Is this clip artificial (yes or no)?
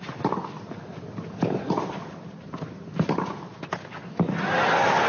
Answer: no